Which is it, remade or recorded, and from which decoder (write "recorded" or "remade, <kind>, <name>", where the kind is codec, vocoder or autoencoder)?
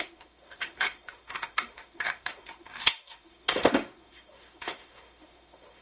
remade, autoencoder, DAC-VAE